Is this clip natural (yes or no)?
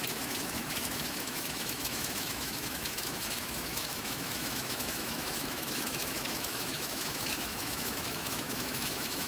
no